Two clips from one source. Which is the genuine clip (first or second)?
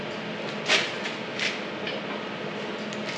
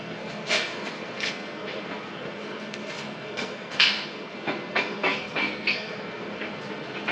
first